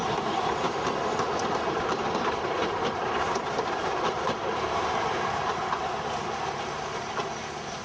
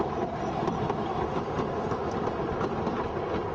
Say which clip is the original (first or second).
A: second